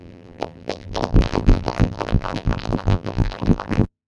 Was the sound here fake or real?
fake